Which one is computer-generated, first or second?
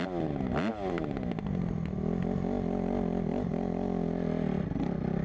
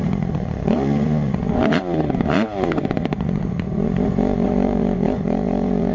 second